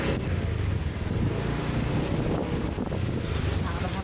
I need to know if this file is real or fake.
real